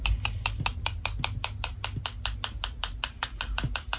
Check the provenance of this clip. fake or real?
real